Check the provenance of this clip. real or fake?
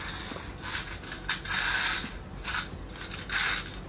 real